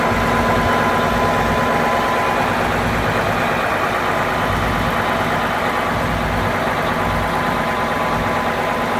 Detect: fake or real real